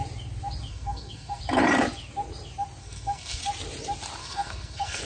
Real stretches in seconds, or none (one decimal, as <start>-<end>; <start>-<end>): 0.0-0.7; 1.4-2.8; 3.4-4.2